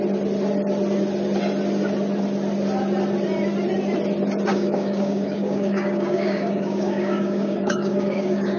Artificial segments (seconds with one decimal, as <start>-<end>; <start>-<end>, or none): 4.5-8.6